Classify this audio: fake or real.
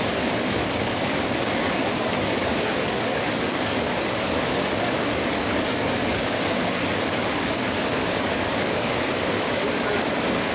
fake